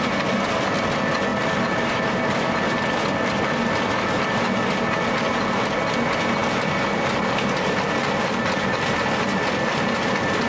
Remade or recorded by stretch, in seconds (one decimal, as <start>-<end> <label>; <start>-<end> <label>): 0.0-10.5 recorded